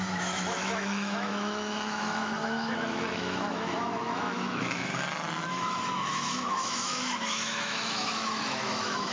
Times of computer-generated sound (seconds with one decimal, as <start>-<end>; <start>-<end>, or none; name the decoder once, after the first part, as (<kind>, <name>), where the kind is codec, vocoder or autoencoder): 0.0-4.9 (autoencoder, DAC-VAE); 5.5-9.1